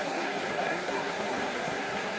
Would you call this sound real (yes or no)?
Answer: no